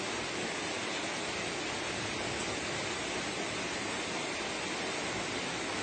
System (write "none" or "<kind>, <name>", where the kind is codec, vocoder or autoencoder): none